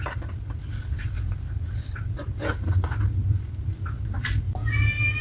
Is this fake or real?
real